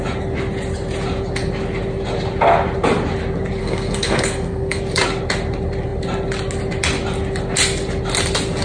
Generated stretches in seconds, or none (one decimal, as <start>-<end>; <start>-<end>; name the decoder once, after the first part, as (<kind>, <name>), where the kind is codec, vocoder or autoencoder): 3.6-4.8 (codec, SNAC)